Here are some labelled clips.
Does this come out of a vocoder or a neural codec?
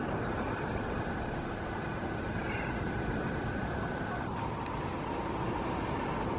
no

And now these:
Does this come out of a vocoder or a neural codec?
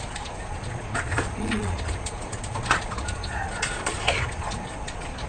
yes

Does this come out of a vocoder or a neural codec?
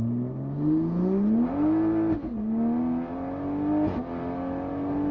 no